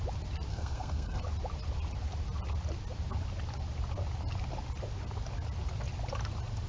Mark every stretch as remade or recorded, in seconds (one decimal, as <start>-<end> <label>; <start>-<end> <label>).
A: 0.0-0.5 recorded; 0.5-1.2 remade; 1.2-6.7 recorded